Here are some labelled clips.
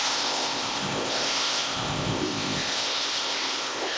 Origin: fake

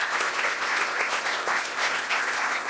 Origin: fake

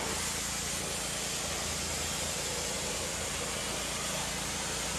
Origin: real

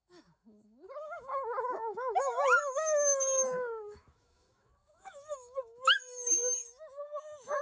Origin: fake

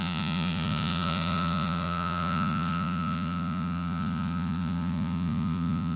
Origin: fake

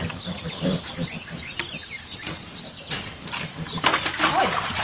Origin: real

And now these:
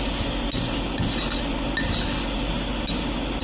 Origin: real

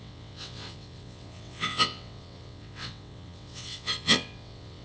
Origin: fake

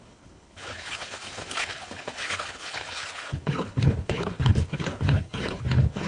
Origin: fake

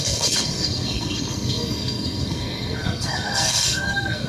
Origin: fake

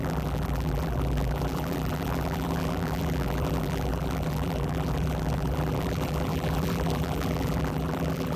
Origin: fake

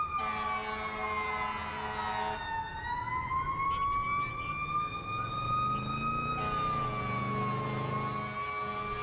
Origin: real